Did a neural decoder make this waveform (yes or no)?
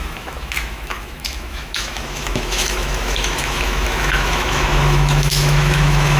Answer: yes